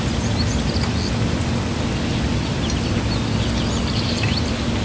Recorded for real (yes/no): yes